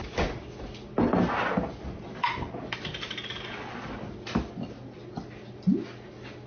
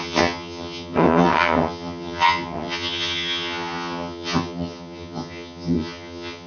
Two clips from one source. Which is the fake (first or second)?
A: second